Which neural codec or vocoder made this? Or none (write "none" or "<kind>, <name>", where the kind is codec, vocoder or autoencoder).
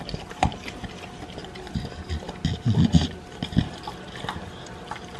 none